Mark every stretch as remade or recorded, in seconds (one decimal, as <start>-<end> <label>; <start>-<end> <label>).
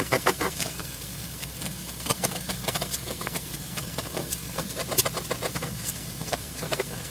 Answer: 0.0-4.8 remade; 4.8-5.5 recorded; 5.5-7.1 remade